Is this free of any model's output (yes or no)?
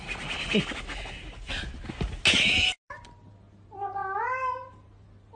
yes